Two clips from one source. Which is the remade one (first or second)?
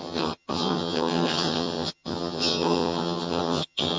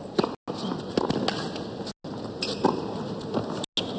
first